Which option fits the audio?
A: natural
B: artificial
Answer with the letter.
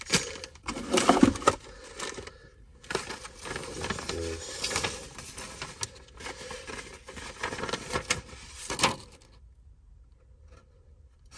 A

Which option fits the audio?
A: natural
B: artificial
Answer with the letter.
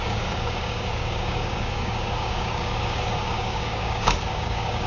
B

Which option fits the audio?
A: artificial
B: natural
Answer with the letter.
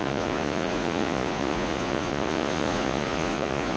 A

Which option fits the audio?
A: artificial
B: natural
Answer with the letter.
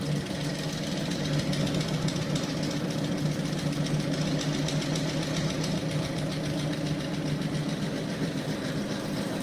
B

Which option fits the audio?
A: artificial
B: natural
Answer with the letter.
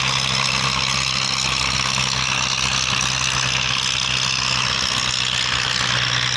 B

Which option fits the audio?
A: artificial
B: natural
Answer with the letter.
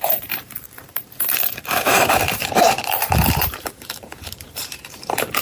A